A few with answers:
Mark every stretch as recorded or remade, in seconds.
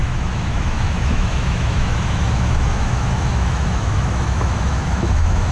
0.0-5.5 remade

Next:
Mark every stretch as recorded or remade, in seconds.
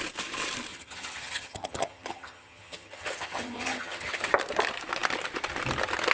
0.0-0.7 recorded; 0.7-4.3 remade; 4.3-6.1 recorded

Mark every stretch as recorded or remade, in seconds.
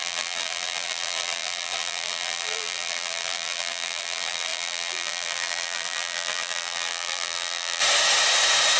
0.0-7.8 remade; 7.8-8.8 recorded